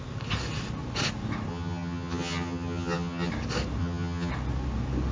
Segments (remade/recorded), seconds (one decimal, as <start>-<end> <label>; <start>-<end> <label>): 0.0-1.5 recorded; 1.5-3.3 remade; 3.3-3.8 recorded; 3.8-4.3 remade; 4.3-5.1 recorded

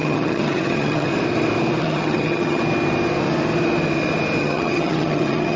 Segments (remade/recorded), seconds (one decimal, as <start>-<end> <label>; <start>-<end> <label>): 0.0-1.1 remade; 1.1-1.8 recorded; 1.8-2.6 remade; 2.6-4.4 recorded; 4.4-5.6 remade

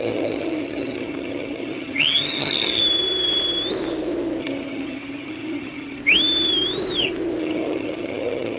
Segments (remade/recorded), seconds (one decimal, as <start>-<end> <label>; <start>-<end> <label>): 0.0-2.8 remade; 2.8-4.4 recorded; 4.4-6.0 remade; 6.0-7.4 recorded; 7.4-8.6 remade

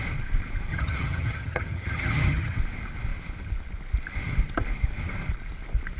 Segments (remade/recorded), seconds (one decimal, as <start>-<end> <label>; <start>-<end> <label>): 0.0-0.7 recorded; 0.7-2.6 remade; 2.6-6.0 recorded

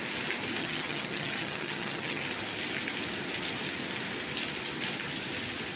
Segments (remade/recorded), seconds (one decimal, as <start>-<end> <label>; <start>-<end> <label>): 0.0-0.6 recorded; 0.6-2.2 remade; 2.2-5.8 recorded